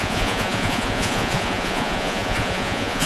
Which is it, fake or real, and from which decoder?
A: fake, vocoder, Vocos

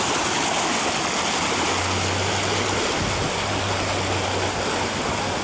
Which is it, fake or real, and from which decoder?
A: real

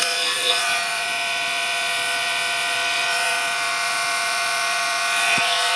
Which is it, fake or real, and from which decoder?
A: fake, vocoder, Vocos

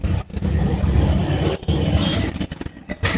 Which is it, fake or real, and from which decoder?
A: real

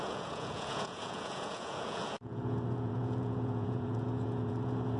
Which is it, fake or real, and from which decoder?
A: fake, vocoder, Vocos